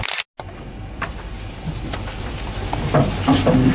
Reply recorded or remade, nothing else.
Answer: recorded